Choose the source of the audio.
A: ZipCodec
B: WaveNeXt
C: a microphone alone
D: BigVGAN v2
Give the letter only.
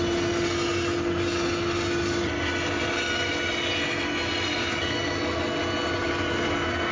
C